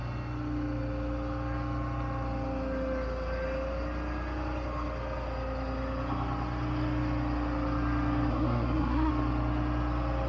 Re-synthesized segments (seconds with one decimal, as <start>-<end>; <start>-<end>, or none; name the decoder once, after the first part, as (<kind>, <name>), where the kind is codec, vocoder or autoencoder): 8.3-9.1 (codec, SNAC)